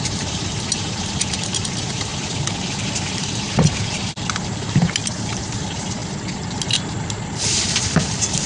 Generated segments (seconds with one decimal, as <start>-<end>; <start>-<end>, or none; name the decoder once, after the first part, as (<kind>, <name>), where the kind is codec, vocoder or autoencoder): 0.0-2.1 (vocoder, BigVGAN v2); 2.7-8.5